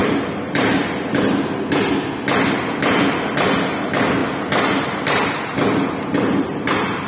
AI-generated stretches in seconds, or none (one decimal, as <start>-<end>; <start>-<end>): 0.0-0.8; 4.2-5.3